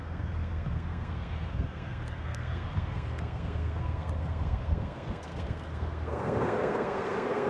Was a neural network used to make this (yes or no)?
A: yes